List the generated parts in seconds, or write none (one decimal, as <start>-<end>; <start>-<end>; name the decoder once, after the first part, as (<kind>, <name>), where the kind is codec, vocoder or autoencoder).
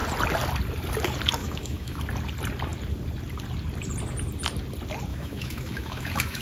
1.4-2.0 (autoencoder, DAC-VAE); 5.1-6.4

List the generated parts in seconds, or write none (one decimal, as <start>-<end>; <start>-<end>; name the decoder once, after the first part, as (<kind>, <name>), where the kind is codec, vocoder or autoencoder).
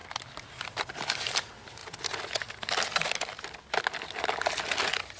0.0-0.7 (vocoder, BigVGAN v2)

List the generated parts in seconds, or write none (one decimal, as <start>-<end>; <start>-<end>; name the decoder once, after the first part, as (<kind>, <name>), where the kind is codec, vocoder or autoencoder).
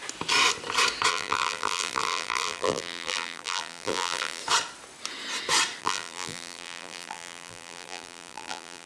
1.1-4.4 (vocoder, BigVGAN v2); 5.8-8.9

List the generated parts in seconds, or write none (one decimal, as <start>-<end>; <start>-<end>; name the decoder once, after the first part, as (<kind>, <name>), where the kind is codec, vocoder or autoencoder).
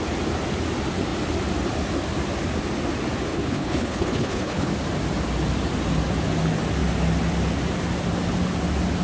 3.3-4.7 (codec, HILCodec)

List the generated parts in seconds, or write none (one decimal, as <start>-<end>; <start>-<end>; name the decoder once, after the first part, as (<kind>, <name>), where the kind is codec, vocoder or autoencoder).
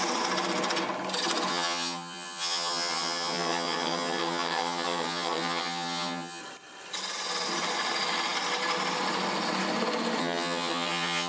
1.5-6.4 (vocoder, HiFi-GAN); 10.2-11.3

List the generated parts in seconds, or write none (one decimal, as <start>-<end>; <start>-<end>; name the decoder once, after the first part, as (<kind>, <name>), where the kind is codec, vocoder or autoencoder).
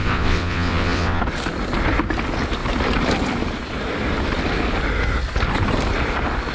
0.0-1.2 (vocoder, WaveNeXt)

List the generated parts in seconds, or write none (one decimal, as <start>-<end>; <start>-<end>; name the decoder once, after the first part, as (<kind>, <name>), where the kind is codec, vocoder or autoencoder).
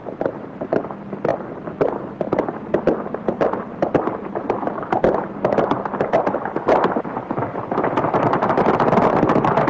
0.0-0.8 (vocoder, BigVGAN v2)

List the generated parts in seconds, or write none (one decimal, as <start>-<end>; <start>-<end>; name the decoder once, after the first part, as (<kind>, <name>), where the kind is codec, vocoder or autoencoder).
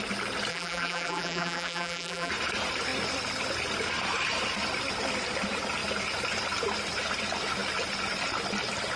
0.5-2.3 (vocoder, BigVGAN v2)